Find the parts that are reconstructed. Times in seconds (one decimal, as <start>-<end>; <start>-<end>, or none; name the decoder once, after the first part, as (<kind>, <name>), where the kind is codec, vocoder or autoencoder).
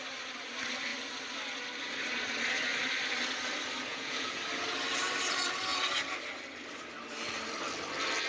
3.9-4.4 (vocoder, Vocos)